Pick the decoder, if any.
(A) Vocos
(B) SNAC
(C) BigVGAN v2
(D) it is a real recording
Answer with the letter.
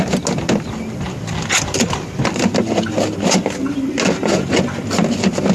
D